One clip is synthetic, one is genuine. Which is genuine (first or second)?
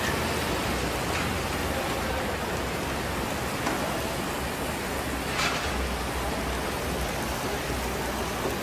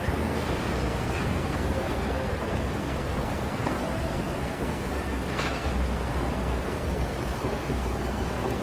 first